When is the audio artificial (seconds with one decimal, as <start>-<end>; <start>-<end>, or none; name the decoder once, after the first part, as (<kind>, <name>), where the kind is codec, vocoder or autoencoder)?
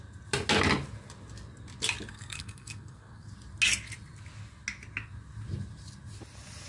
2.1-3.3 (codec, SNAC)